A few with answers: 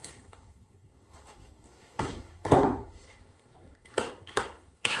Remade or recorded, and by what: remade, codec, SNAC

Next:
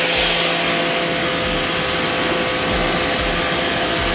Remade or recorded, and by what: recorded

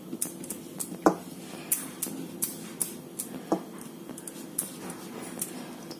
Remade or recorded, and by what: recorded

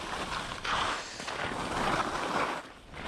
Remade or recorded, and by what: recorded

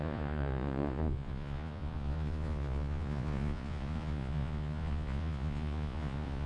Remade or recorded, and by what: remade, vocoder, Vocos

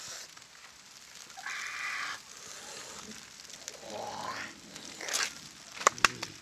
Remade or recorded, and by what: recorded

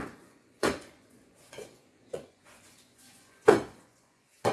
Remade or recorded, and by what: remade, vocoder, Vocos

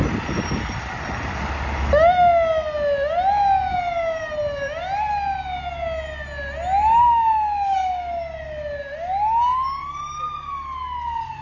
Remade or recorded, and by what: recorded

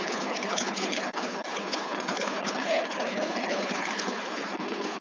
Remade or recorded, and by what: remade, codec, HILCodec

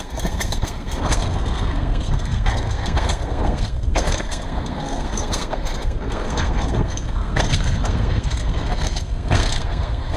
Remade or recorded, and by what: remade, codec, SNAC